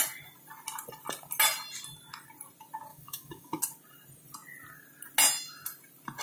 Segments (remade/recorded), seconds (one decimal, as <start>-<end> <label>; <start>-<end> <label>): 0.0-2.9 recorded; 2.9-3.6 remade; 3.6-6.2 recorded